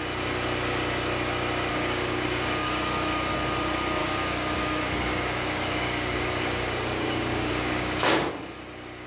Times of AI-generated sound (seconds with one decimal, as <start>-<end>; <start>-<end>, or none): 1.7-3.3; 4.0-8.3